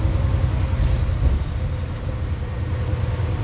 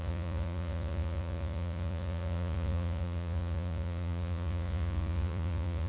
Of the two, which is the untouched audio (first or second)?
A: first